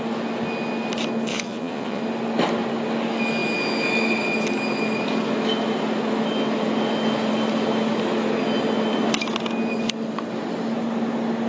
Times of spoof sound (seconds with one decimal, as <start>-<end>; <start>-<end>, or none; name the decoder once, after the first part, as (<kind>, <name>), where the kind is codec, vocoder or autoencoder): 1.3-2.0 (vocoder, Vocos)

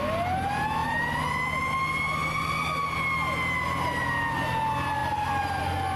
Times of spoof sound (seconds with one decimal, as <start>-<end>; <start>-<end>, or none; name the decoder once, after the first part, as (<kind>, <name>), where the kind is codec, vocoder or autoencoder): none

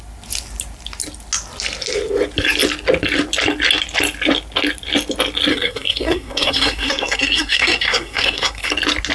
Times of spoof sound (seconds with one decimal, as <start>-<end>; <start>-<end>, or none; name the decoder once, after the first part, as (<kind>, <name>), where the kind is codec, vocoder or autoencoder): 5.5-8.7 (codec, SNAC)

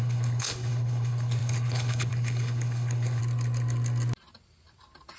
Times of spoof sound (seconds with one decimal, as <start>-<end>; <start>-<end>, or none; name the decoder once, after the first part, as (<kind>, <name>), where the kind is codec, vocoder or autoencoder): 0.0-3.2 (codec, HILCodec)

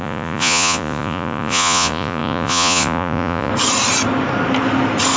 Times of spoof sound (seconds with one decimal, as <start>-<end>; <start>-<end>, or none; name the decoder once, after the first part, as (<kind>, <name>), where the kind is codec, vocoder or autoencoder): 0.0-3.5 (vocoder, Vocos)

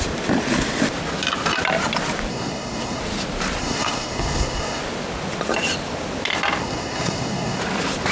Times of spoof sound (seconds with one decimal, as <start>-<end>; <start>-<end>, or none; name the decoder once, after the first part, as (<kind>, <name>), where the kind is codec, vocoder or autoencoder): 2.3-3.0 (codec, SNAC); 3.6-4.8; 6.6-7.6

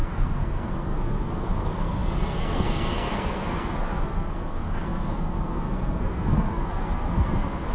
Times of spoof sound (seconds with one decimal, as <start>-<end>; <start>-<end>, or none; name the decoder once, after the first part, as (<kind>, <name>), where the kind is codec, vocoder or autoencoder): 0.0-7.7 (codec, SNAC)

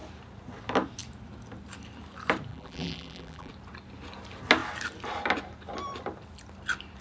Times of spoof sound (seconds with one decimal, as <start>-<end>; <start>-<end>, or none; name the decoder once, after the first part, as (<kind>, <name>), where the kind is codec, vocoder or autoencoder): 2.5-3.5 (vocoder, BigVGAN v2)